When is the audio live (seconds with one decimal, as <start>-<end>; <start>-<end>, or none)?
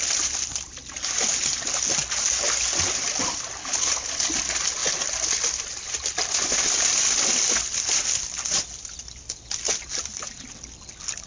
0.0-3.6; 4.1-11.3